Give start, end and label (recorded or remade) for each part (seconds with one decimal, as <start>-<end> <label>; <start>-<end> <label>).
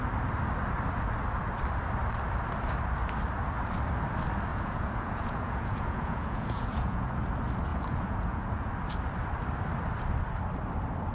0.0-4.5 recorded; 4.5-7.2 remade; 7.2-7.7 recorded; 7.7-8.7 remade; 8.7-11.1 recorded